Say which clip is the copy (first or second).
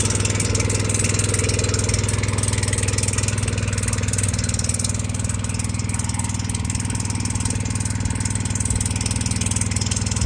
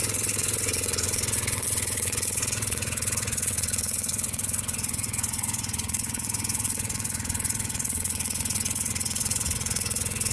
second